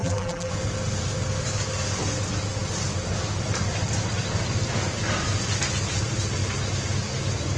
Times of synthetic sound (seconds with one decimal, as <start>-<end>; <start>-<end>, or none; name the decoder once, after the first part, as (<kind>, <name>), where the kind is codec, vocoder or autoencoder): 0.0-0.5 (vocoder, BigVGAN v2)